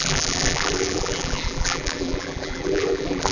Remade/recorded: remade